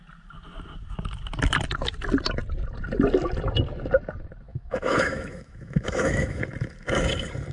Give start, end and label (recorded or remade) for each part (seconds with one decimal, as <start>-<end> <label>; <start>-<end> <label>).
0.0-4.5 recorded; 4.5-6.4 remade; 6.4-7.5 recorded